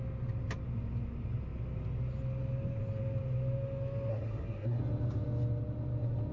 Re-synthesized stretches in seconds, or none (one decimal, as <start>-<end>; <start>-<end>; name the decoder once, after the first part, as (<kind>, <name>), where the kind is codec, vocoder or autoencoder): 4.1-4.8 (codec, SNAC)